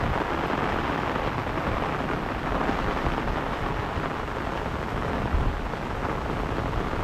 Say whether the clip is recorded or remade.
recorded